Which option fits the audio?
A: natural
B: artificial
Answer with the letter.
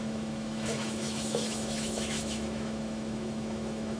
B